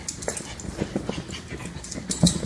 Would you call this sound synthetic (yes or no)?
no